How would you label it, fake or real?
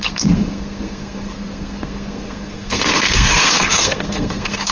fake